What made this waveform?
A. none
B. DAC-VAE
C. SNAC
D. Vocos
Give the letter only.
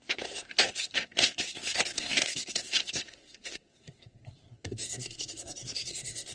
C